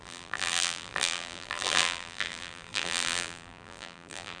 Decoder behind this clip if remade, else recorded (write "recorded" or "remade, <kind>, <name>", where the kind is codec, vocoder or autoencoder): remade, vocoder, BigVGAN v2